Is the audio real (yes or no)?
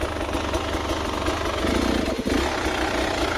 yes